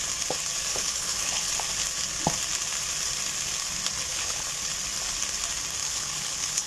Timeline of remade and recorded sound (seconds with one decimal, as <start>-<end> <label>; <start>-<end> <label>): 0.0-0.7 recorded; 0.7-1.5 remade; 1.5-4.1 recorded; 4.1-4.7 remade; 4.7-5.8 recorded; 5.8-6.7 remade